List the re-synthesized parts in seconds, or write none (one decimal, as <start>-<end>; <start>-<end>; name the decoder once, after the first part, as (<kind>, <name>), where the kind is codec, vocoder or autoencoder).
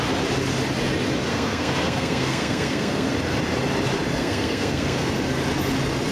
1.3-3.1 (codec, SNAC); 4.2-5.1